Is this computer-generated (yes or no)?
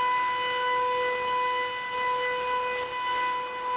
no